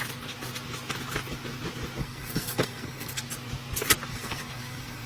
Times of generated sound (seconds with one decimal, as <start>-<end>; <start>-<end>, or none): 2.0-3.2; 4.1-5.1